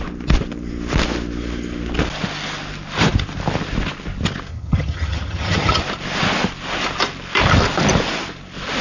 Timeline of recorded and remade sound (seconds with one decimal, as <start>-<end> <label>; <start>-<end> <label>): 0.0-4.5 recorded; 4.5-5.8 remade; 5.8-8.8 recorded